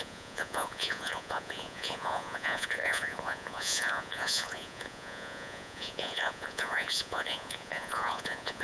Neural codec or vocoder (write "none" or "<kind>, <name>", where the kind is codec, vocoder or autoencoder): vocoder, Vocos